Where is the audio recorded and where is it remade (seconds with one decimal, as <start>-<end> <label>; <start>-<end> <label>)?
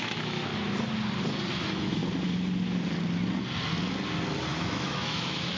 0.0-0.5 remade; 0.5-1.5 recorded; 1.5-2.0 remade; 2.0-4.5 recorded; 4.5-5.6 remade